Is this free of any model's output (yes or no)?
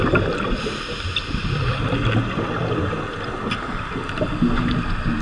yes